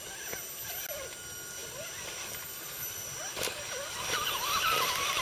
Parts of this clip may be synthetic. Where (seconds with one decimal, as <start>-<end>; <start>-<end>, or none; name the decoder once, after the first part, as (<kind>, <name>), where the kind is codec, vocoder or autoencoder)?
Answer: none